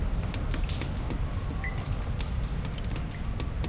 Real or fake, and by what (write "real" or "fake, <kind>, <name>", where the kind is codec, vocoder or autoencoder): real